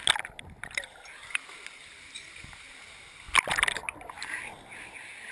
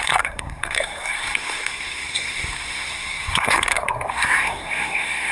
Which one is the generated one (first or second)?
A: second